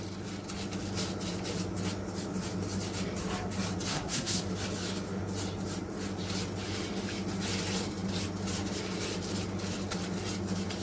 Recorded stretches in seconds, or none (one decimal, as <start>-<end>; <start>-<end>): 0.0-3.9; 4.4-10.8